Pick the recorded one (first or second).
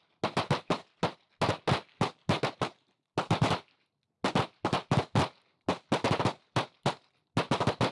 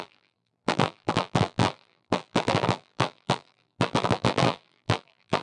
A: first